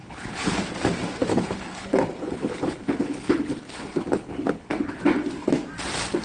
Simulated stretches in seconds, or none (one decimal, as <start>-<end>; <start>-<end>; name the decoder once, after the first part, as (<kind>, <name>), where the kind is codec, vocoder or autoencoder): 0.0-0.6 (codec, HILCodec); 1.3-5.0